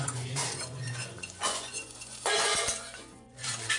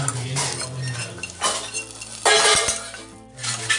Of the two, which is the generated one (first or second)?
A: first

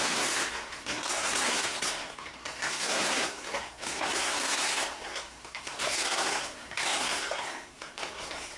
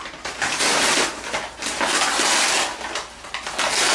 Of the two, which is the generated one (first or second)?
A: first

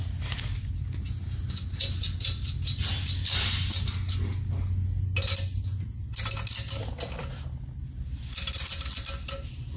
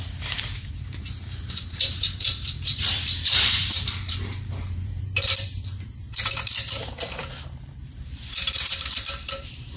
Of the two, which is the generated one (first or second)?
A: second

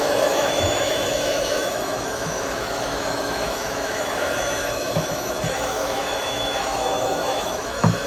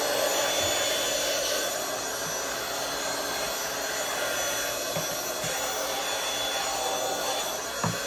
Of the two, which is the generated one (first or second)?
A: first